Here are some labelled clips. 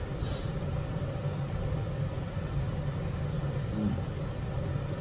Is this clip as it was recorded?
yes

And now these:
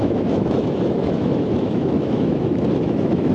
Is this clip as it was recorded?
no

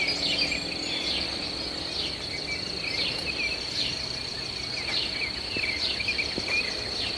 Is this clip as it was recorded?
yes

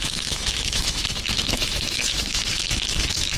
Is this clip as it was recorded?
no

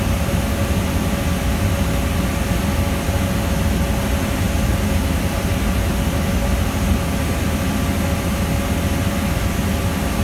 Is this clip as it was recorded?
yes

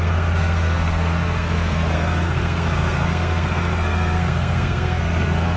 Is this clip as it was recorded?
no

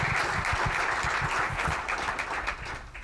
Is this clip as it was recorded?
yes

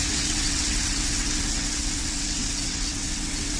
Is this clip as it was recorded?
no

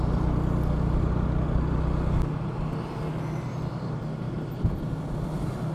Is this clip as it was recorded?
yes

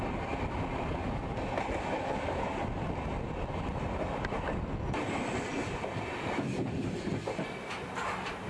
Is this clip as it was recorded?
yes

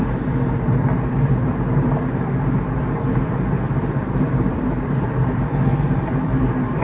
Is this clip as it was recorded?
no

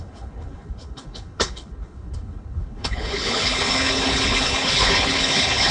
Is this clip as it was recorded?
no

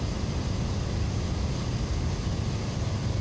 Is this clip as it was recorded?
yes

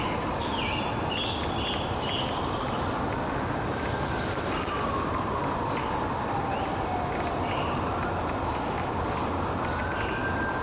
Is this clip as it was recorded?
yes